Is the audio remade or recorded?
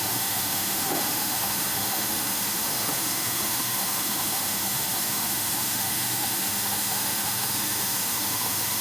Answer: remade